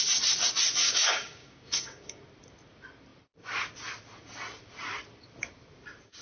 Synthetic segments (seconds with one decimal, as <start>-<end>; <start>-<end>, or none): 0.8-2.2